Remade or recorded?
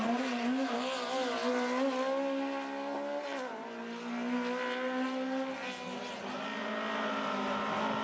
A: recorded